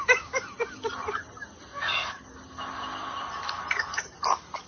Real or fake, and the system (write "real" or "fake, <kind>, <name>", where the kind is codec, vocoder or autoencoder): real